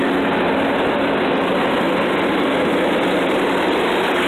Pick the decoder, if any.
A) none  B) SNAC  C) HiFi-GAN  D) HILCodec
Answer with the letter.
A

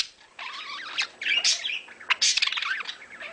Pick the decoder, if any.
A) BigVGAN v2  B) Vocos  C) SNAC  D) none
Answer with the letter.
D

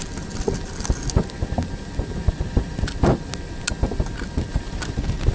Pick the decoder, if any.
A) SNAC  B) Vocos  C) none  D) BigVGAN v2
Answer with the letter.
C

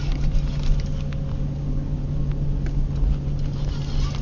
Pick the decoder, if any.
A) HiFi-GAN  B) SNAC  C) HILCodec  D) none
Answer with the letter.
D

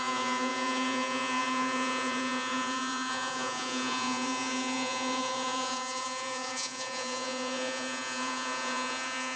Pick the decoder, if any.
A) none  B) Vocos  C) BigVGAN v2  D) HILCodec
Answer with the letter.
B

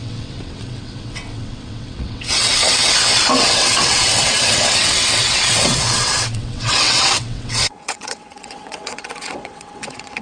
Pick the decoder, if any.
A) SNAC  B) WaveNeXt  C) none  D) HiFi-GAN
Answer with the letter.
B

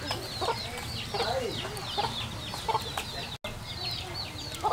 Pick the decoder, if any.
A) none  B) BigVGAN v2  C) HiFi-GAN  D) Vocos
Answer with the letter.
A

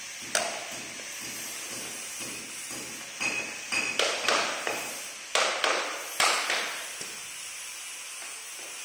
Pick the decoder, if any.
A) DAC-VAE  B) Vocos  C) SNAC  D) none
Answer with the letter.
D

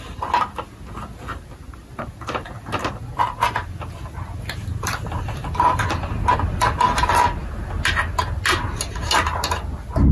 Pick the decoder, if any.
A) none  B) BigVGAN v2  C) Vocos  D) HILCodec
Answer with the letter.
A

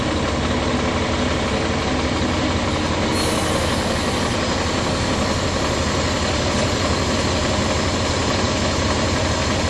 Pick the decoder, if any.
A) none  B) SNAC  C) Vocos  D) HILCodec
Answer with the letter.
A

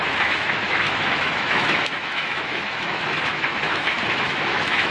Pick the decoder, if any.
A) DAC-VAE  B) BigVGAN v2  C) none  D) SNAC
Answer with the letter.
A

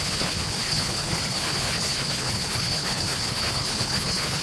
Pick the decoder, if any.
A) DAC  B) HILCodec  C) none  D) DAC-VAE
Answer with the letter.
B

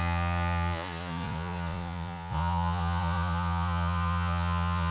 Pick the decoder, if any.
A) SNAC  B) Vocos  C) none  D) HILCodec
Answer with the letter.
B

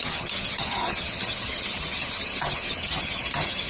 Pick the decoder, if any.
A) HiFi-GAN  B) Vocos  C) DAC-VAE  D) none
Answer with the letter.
A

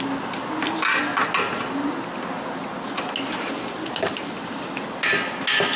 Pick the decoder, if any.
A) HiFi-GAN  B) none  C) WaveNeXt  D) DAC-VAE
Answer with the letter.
B